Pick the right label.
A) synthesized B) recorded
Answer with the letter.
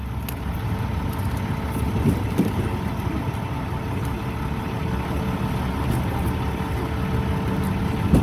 B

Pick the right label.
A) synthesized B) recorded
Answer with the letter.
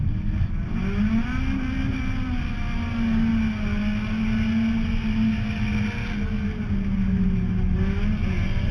B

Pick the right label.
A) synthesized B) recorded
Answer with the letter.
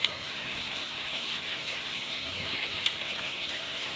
A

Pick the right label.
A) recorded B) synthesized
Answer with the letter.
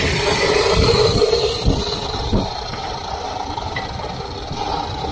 A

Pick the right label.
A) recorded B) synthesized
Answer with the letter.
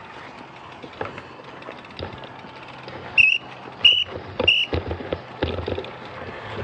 A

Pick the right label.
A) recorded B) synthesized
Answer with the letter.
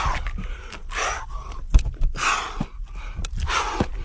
A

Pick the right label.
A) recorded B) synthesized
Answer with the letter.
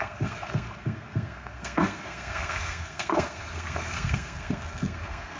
B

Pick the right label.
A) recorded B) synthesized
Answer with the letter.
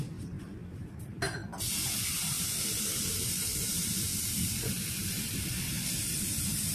B